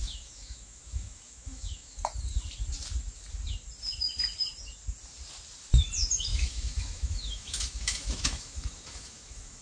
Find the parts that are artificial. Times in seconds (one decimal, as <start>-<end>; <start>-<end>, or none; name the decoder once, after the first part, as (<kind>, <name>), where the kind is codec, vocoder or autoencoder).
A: 0.0-2.0 (autoencoder, DAC-VAE); 6.3-9.6

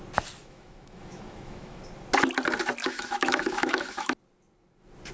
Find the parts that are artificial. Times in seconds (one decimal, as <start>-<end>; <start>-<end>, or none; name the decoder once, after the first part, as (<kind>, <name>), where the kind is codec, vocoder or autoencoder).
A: 0.4-1.8 (autoencoder, DAC-VAE); 2.8-4.1

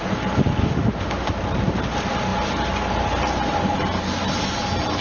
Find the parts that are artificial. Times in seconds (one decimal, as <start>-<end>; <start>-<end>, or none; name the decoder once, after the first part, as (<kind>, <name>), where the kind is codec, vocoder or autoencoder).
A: 0.6-1.3 (autoencoder, DAC-VAE)

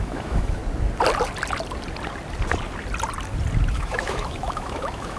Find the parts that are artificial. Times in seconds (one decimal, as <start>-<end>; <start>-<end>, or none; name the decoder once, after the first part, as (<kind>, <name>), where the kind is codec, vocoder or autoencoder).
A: 0.0-0.6 (autoencoder, DAC-VAE); 3.7-5.2